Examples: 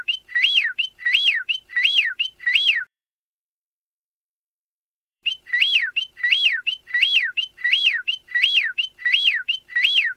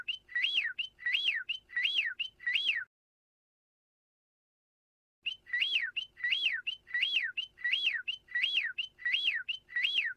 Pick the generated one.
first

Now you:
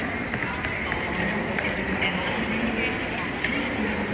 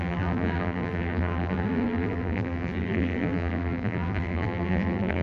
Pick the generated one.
second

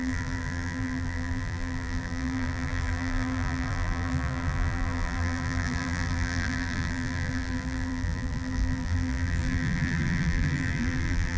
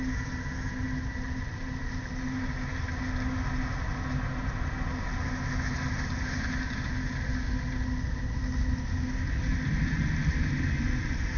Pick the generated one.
first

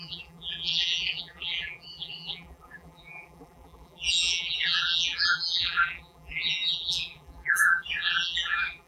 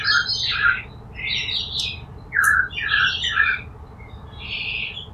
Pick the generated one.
first